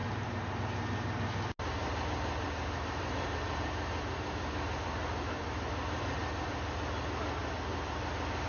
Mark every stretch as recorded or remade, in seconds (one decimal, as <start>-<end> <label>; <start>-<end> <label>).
0.0-0.5 remade; 0.5-1.8 recorded; 1.8-6.7 remade; 6.7-7.4 recorded; 7.4-8.0 remade; 8.0-8.5 recorded